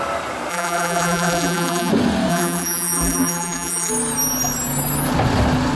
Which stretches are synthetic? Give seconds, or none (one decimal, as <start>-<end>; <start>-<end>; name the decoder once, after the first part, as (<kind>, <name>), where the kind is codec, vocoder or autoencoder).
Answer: 0.5-1.9 (vocoder, BigVGAN v2); 2.3-3.9